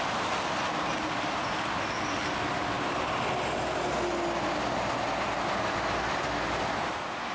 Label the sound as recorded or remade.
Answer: recorded